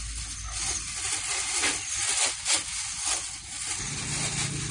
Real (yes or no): yes